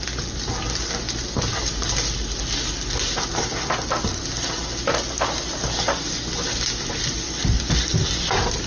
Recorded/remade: recorded